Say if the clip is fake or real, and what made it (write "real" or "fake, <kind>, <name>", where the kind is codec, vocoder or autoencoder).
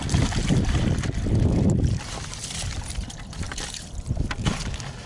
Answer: real